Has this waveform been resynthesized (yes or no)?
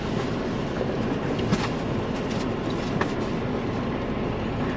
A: no